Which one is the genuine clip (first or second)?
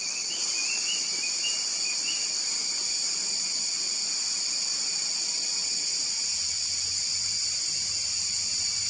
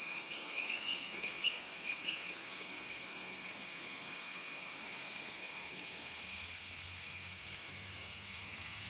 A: first